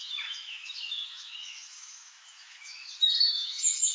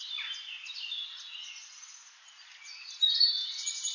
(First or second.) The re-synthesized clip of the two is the first